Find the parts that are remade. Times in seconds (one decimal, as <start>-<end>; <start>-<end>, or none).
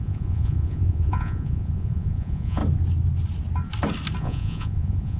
0.0-2.6; 4.2-5.2